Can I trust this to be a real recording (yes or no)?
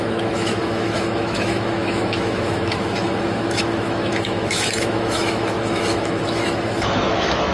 no